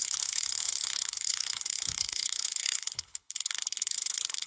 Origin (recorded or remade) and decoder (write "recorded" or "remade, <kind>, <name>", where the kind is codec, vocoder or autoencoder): remade, codec, HILCodec